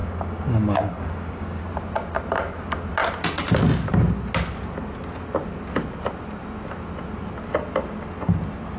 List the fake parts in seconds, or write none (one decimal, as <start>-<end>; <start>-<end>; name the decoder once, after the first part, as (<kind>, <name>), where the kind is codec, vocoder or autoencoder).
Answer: 0.0-1.6 (codec, DAC)